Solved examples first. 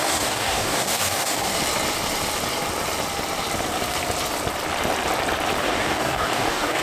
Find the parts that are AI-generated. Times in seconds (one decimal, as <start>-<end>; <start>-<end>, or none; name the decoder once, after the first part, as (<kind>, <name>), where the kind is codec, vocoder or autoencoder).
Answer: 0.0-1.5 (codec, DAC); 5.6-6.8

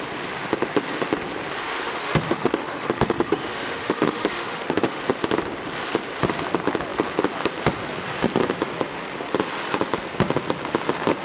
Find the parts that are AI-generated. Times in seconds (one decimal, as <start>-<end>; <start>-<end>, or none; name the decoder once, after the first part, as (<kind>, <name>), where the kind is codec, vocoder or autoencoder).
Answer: 1.6-5.0 (autoencoder, DAC-VAE)

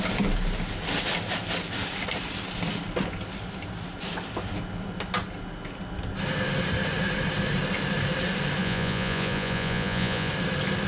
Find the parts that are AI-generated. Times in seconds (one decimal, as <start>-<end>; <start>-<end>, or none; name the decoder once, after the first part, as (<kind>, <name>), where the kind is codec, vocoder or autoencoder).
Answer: 8.6-10.3 (vocoder, Vocos)

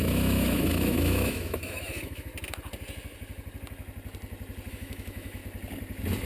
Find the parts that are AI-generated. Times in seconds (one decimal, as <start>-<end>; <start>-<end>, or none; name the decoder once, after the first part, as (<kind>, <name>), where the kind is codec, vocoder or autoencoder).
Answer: 0.0-2.3 (autoencoder, DAC-VAE); 4.7-5.4